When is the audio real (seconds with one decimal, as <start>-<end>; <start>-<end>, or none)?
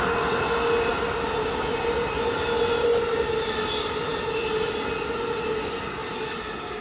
0.0-6.8